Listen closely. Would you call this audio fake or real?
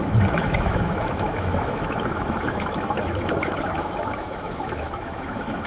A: fake